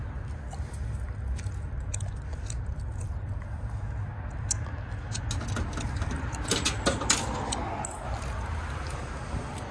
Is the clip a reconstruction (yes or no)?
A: no